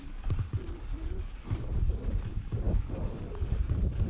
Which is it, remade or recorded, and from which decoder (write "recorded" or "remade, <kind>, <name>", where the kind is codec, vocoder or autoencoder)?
remade, codec, DAC